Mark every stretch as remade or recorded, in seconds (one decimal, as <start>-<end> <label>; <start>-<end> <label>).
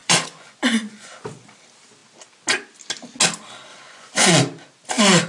0.0-1.1 remade; 1.1-3.7 recorded; 3.7-4.3 remade; 4.3-5.3 recorded